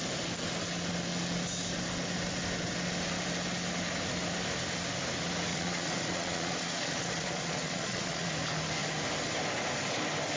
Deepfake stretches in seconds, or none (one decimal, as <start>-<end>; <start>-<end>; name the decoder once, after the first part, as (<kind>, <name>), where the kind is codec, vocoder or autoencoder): 5.5-8.3 (vocoder, Vocos)